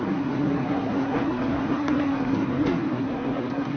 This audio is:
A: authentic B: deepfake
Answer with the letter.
B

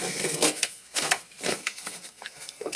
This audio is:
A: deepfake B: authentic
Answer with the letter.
A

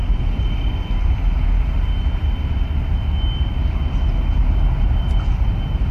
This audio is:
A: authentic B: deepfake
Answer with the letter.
A